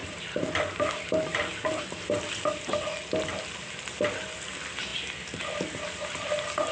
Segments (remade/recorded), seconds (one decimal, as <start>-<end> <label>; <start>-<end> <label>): 0.0-0.7 remade; 0.7-6.7 recorded